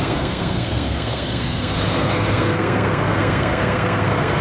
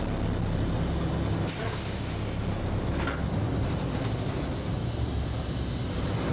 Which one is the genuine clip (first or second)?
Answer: second